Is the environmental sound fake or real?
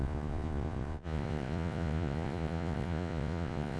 fake